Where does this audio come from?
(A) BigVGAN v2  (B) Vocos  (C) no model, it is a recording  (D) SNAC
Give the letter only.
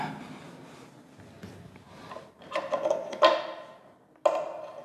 C